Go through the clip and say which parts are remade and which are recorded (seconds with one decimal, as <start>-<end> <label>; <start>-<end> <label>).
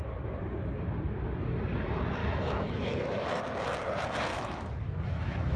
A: 0.0-2.2 recorded; 2.2-3.4 remade; 3.4-4.3 recorded; 4.3-5.6 remade